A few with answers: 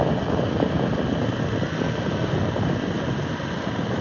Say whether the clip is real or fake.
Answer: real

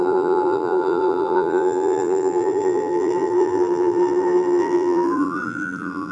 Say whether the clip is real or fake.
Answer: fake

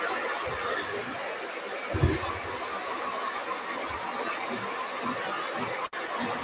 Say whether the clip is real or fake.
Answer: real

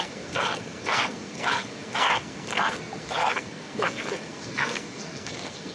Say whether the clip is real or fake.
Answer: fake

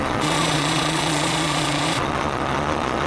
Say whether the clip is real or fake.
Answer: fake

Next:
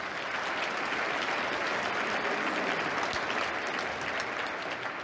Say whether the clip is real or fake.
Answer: real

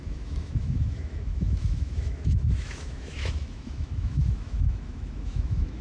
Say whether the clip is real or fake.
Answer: fake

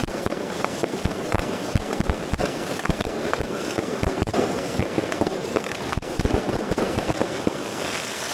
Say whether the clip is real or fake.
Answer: fake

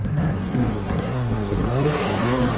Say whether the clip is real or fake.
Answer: fake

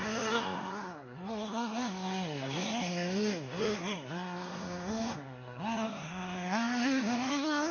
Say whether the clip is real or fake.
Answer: fake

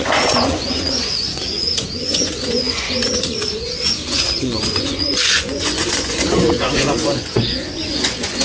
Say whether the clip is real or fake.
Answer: fake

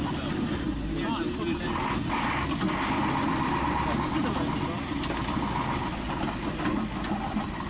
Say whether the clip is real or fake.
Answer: real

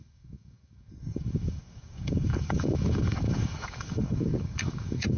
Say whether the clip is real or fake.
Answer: fake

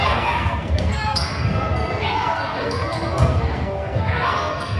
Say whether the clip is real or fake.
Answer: fake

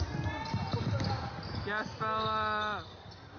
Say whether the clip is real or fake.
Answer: real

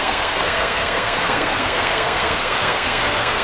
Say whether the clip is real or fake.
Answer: fake